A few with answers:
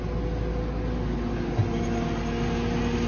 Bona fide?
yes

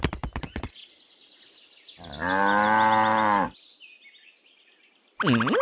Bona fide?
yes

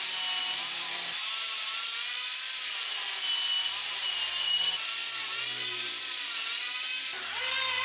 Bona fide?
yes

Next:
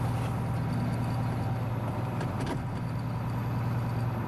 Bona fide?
yes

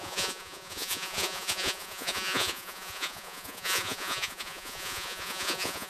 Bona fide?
no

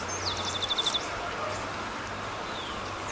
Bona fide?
yes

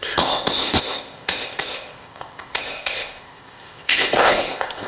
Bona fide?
no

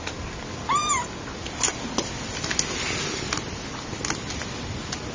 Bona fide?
yes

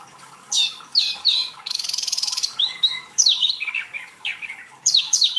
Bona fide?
no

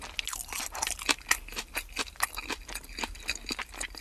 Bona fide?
yes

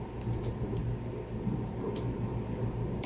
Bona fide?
yes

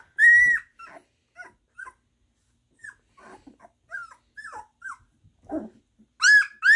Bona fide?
yes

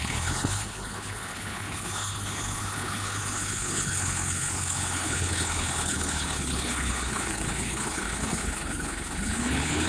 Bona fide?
no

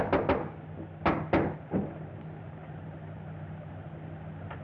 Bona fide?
yes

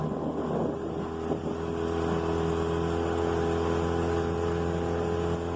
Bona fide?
yes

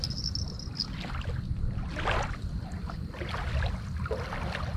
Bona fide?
yes